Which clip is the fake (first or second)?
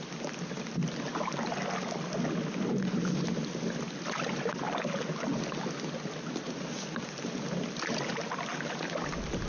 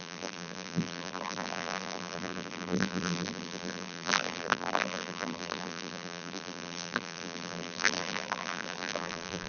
second